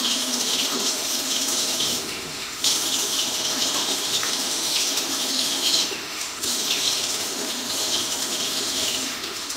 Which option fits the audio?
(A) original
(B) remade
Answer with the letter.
B